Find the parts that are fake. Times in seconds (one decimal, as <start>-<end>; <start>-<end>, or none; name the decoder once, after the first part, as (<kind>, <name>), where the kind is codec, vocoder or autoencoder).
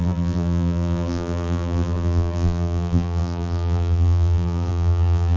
0.0-5.4 (vocoder, BigVGAN v2)